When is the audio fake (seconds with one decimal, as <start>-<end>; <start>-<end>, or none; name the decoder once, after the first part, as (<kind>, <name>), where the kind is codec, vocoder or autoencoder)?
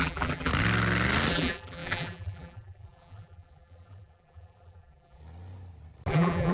0.0-0.5 (vocoder, BigVGAN v2); 1.3-5.2; 6.1-6.5